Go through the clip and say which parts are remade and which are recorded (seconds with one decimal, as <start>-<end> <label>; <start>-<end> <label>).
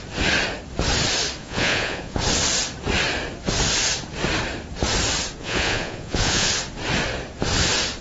0.0-1.4 recorded; 1.4-2.2 remade; 2.2-5.4 recorded; 5.4-6.5 remade; 6.5-8.0 recorded